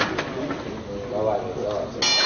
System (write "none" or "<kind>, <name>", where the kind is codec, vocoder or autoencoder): none